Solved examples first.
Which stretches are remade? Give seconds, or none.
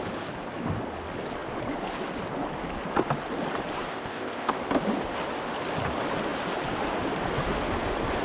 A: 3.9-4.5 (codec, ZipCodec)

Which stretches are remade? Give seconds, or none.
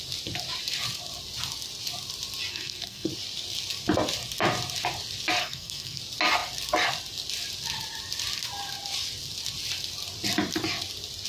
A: 2.5-3.1 (codec, SNAC); 5.4-6.0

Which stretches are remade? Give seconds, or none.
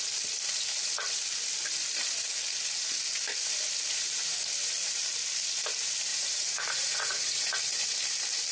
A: 6.1-7.5 (vocoder, Vocos)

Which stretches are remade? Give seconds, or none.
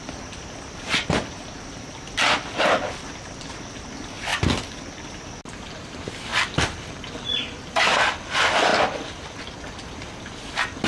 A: none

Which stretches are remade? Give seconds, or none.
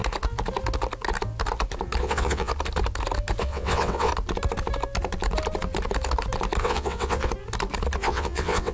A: 2.0-2.5 (vocoder, WaveNeXt); 3.4-4.1; 6.6-7.3; 8.0-8.7